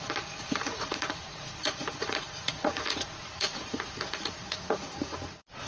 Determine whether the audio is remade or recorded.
remade